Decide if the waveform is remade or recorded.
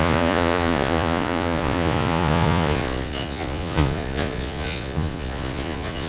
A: remade